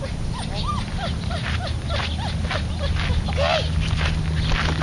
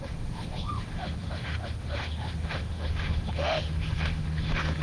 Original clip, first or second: first